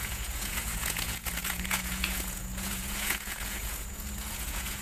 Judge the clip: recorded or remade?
remade